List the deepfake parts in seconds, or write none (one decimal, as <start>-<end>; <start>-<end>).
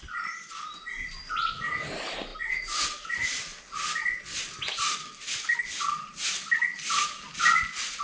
none